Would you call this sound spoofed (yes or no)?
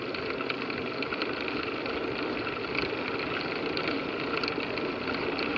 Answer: no